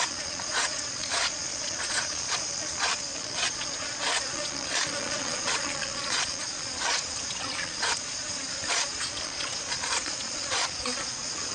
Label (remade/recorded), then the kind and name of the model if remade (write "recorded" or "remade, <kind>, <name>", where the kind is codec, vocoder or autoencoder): remade, vocoder, Vocos